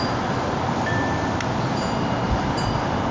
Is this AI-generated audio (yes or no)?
no